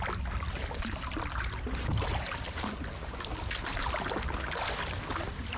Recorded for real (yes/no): yes